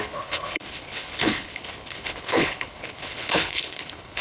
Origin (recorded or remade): remade